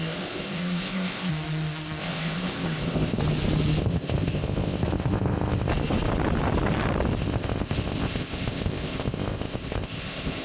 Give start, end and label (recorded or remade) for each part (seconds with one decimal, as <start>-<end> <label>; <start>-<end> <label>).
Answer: 0.0-1.3 remade; 1.3-2.0 recorded; 2.0-3.2 remade; 3.2-3.8 recorded; 3.8-5.7 remade; 5.7-7.2 recorded; 7.2-10.4 remade

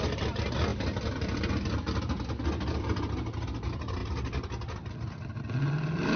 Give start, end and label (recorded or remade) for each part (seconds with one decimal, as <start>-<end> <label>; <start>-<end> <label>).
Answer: 0.0-0.7 recorded; 0.7-2.0 remade; 2.0-4.0 recorded; 4.0-6.2 remade

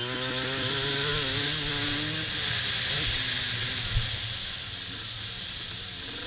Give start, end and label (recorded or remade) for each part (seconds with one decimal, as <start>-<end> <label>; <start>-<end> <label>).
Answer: 0.0-6.3 recorded

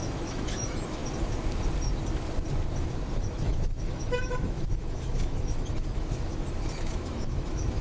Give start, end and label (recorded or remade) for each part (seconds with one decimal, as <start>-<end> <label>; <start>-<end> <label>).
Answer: 0.0-1.0 remade; 1.0-3.2 recorded; 3.2-7.8 remade

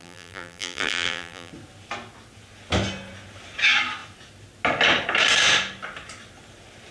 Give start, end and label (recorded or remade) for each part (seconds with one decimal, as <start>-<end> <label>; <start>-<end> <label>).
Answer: 0.0-1.5 remade; 1.5-6.9 recorded

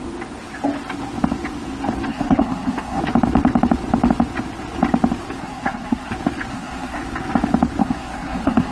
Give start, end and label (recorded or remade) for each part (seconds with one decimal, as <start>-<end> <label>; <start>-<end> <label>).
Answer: 0.0-2.1 recorded; 2.1-3.0 remade; 3.0-5.4 recorded; 5.4-6.1 remade; 6.1-6.5 recorded; 6.5-7.0 remade; 7.0-7.8 recorded; 7.8-8.7 remade

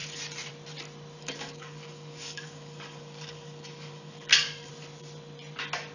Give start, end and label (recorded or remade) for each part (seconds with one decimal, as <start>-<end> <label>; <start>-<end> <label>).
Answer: 0.0-1.2 recorded; 1.2-4.7 remade; 4.7-5.9 recorded